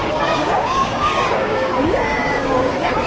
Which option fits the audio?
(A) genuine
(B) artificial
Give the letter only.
B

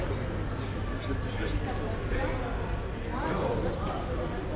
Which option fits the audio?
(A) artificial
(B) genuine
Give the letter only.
B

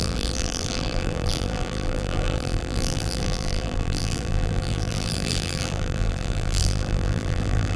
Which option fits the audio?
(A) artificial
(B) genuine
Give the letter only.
A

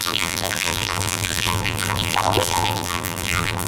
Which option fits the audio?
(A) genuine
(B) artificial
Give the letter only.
B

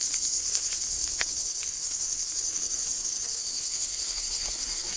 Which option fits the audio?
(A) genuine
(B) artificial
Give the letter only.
B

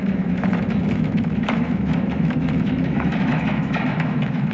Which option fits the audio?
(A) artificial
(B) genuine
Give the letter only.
A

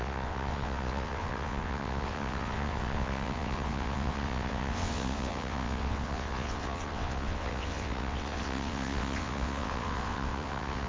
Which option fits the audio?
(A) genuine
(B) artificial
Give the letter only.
B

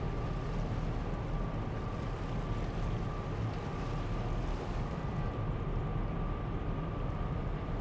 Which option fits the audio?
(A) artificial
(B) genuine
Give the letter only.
B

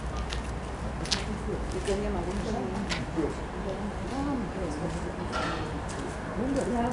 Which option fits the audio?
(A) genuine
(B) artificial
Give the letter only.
A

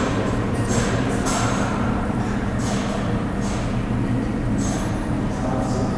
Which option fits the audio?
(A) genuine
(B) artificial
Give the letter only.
A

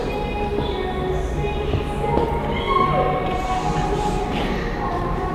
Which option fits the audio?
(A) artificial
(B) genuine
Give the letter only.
B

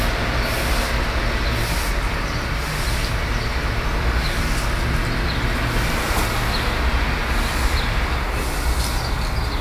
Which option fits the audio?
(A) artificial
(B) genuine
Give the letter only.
B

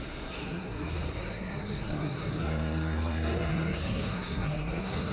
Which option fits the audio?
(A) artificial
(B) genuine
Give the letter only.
A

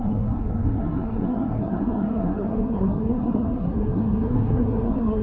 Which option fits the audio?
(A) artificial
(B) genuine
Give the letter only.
A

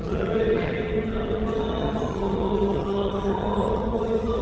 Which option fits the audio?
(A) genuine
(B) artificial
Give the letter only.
B